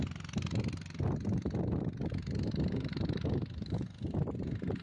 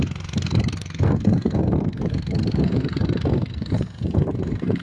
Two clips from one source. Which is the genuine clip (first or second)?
first